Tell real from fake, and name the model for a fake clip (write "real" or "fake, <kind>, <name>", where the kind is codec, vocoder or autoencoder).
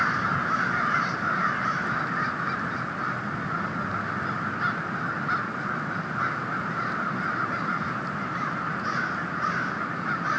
real